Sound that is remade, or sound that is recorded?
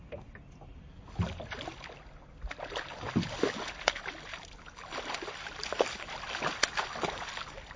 recorded